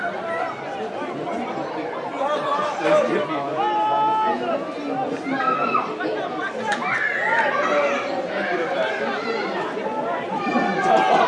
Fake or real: real